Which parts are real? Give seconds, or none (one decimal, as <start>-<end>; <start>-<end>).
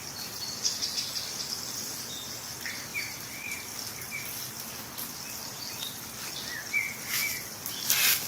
0.0-2.9; 6.0-8.3